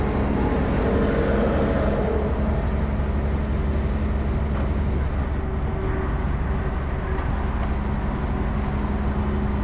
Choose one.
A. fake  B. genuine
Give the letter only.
B